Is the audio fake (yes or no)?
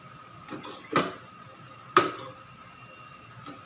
no